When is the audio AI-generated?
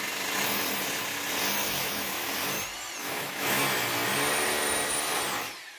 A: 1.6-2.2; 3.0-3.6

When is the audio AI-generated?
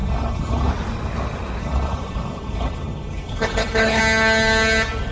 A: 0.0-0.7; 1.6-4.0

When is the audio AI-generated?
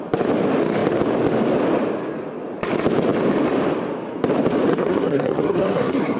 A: 4.7-6.2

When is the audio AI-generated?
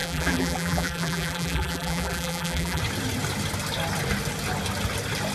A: 0.0-2.8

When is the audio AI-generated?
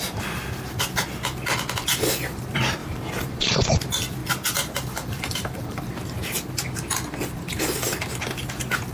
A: 2.8-3.6; 4.2-5.9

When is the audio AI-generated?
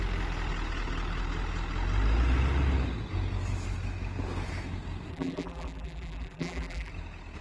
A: 5.1-6.9